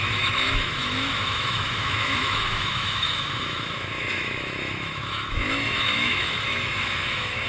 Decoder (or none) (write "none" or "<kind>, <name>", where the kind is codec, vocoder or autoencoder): autoencoder, DAC-VAE